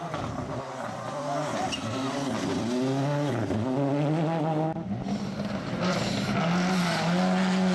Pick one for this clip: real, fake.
real